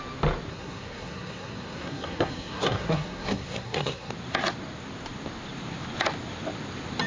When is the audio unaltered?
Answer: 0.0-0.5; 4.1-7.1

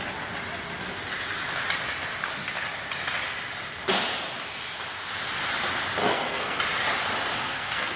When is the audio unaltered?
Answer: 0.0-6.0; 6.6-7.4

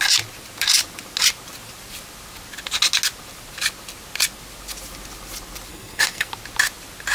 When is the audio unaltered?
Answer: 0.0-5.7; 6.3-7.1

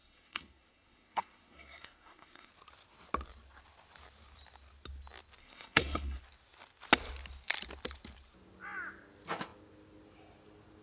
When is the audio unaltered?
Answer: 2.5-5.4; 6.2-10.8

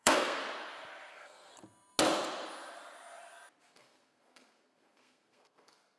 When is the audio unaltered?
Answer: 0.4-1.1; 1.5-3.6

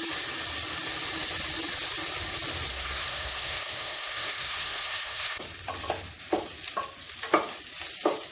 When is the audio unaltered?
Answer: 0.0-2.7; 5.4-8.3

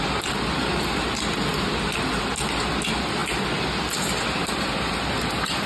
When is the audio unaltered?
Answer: 0.0-5.7